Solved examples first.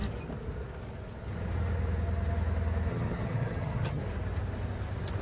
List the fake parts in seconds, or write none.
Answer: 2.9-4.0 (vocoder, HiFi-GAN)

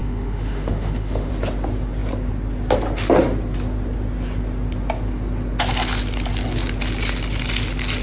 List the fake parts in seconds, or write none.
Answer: 0.0-1.3 (autoencoder, DAC-VAE)